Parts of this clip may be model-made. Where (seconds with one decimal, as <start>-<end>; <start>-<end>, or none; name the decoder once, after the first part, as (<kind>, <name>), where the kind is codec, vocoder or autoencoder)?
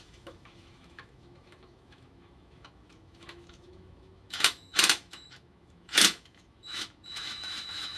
0.0-8.0 (autoencoder, DAC-VAE)